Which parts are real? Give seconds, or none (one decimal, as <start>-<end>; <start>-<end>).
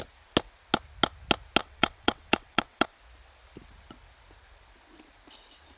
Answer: 0.0-1.6; 3.0-5.8